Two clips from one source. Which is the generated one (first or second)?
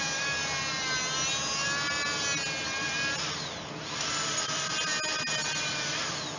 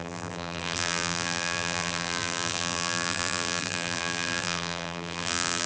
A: second